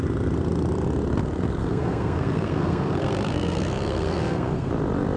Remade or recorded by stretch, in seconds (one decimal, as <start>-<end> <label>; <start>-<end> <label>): 0.0-1.6 recorded; 1.6-4.7 remade; 4.7-5.2 recorded